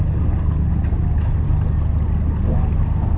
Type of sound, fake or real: real